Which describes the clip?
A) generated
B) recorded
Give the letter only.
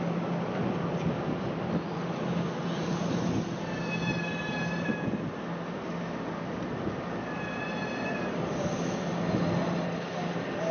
B